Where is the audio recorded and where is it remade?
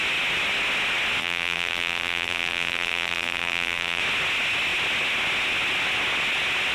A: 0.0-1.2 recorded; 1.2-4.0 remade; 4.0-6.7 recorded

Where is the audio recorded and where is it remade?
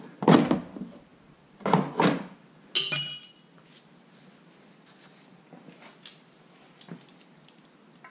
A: 0.0-8.1 recorded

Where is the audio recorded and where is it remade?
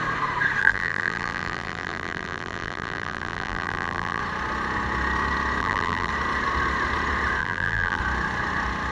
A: 0.0-0.6 recorded; 0.6-4.2 remade; 4.2-5.6 recorded; 5.6-6.1 remade; 6.1-7.4 recorded; 7.4-8.0 remade; 8.0-8.9 recorded